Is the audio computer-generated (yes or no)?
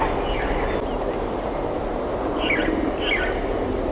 no